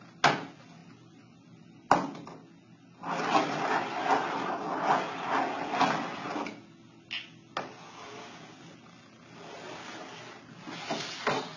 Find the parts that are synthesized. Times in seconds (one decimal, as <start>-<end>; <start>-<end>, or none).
none